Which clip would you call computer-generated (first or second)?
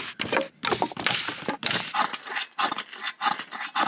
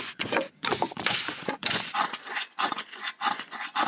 second